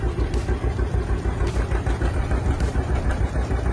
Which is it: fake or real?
real